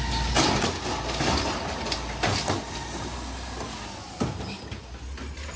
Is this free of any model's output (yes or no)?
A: yes